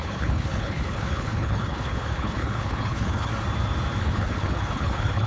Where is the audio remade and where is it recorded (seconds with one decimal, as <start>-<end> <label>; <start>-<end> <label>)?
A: 0.0-3.3 remade; 3.3-4.0 recorded; 4.0-5.3 remade